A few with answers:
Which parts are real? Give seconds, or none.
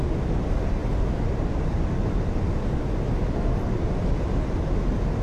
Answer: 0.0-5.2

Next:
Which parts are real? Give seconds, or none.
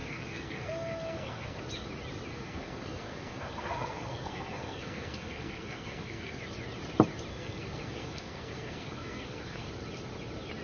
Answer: 1.6-2.3; 6.4-7.3; 9.7-10.6